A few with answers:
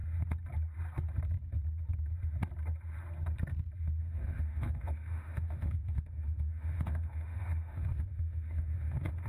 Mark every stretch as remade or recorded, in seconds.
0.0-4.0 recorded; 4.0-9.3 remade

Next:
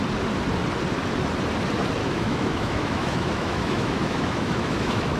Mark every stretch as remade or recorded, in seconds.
0.0-2.0 recorded; 2.0-5.2 remade

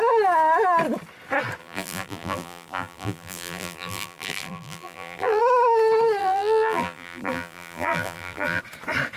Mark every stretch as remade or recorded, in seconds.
0.0-1.6 recorded; 1.6-5.4 remade; 5.4-6.2 recorded; 6.2-8.6 remade; 8.6-9.2 recorded

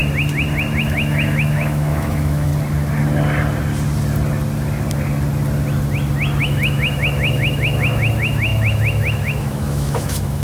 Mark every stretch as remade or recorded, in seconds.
0.0-0.8 recorded; 0.8-2.5 remade; 2.5-6.4 recorded; 6.4-10.4 remade

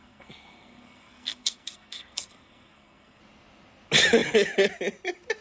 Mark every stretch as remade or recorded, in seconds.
0.0-3.2 remade; 3.2-5.4 recorded

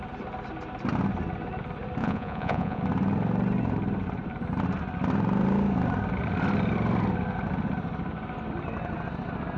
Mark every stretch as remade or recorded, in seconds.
0.0-2.0 recorded; 2.0-2.8 remade; 2.8-9.6 recorded

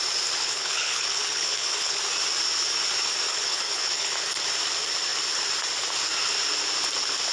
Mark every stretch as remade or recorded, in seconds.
0.0-0.4 recorded; 0.4-2.0 remade; 2.0-3.3 recorded; 3.3-4.1 remade; 4.1-7.3 recorded